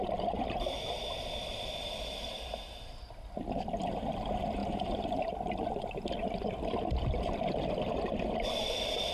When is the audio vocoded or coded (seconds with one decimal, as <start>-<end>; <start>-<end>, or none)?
1.8-2.6; 4.6-5.5